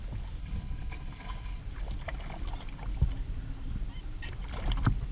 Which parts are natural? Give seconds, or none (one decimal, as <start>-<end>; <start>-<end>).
0.0-0.4; 1.6-5.1